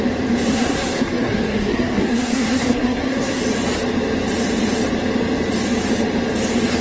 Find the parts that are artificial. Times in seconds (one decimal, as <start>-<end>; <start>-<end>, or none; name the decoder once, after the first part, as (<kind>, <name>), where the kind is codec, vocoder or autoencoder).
0.5-3.4 (codec, SNAC)